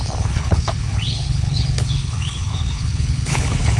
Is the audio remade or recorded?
remade